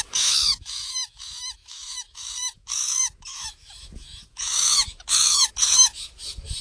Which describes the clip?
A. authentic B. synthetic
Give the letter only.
B